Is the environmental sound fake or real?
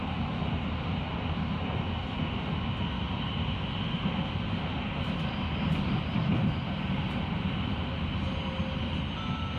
real